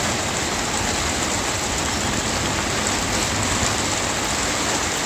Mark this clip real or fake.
real